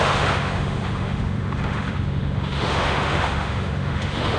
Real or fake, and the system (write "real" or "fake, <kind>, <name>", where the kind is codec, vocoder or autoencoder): fake, autoencoder, DAC-VAE